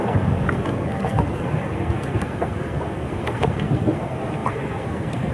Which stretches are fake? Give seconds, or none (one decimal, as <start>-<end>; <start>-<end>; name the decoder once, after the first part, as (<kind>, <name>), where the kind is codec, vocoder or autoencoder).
0.0-5.3 (codec, SNAC)